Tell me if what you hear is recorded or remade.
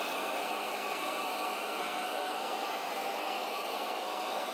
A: remade